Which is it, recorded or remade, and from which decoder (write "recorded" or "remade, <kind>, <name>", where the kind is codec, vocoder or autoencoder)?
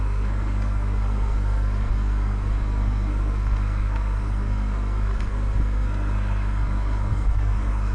remade, codec, SNAC